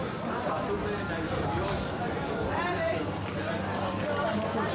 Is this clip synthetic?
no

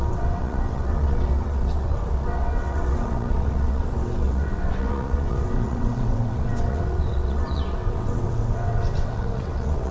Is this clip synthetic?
yes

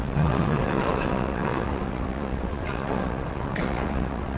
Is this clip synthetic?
yes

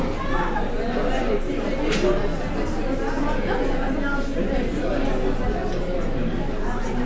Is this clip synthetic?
no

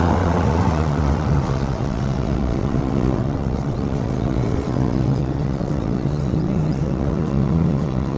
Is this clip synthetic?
yes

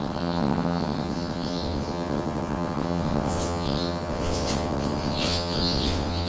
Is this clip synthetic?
yes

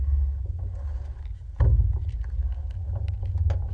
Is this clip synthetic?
no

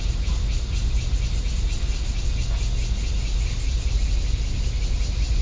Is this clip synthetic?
no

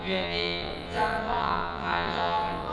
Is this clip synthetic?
yes